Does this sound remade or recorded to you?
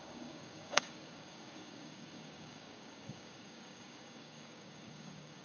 remade